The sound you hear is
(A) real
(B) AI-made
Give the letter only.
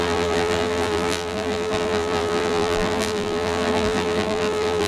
B